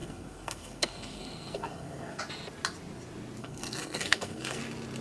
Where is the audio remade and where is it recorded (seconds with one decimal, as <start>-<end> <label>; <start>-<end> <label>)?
0.0-2.2 remade; 2.2-3.4 recorded; 3.4-4.6 remade; 4.6-5.0 recorded